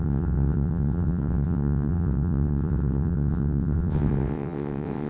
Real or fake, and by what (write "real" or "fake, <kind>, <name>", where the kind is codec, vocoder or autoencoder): fake, vocoder, WaveNeXt